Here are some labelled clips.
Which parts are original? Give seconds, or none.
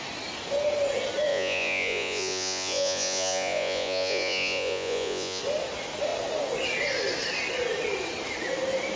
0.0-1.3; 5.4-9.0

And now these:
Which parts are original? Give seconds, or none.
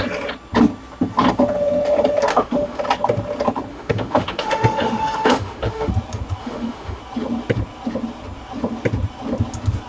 0.0-2.3; 2.8-3.7; 5.9-6.4; 7.0-9.9